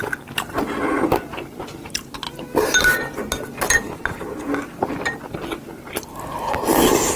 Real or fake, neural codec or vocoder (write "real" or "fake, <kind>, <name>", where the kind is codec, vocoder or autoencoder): real